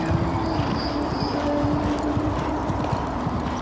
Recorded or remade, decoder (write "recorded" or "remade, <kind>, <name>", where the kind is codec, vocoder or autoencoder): recorded